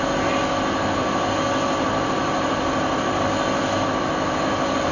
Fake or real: real